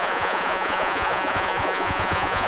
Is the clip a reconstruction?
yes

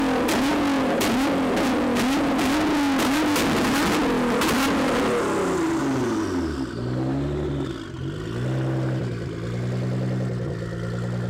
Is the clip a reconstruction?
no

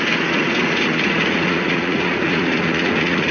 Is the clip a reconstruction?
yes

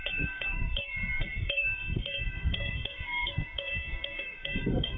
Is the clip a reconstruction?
yes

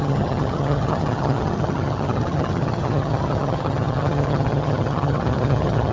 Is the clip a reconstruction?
yes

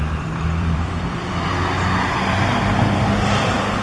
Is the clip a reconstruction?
yes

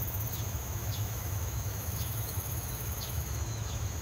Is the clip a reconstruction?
yes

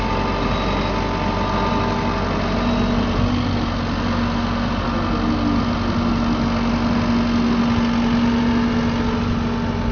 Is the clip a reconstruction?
no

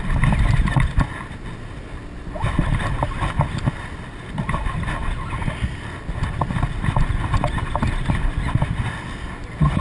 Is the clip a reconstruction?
no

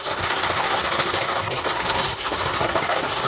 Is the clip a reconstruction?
yes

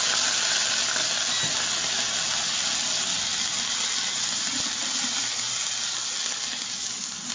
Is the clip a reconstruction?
no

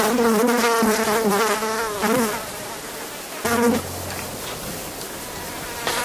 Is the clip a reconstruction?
no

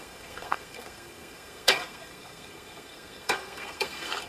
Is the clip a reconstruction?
yes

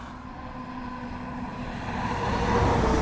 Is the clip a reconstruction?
no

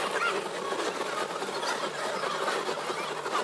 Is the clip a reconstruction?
no